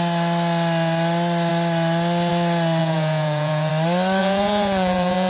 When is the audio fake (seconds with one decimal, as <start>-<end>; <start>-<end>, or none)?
2.8-3.7; 4.2-5.3